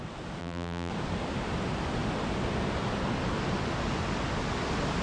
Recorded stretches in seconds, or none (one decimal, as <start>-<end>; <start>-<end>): 0.0-0.4; 0.9-5.0